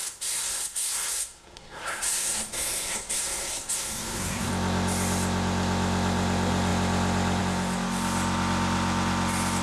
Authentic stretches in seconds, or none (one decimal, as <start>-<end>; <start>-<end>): 4.5-9.6